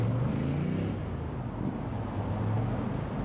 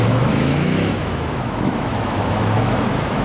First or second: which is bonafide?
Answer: first